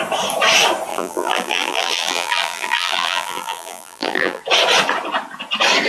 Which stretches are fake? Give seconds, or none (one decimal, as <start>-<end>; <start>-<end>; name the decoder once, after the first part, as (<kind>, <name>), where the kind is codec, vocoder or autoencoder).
0.9-4.4 (vocoder, BigVGAN v2)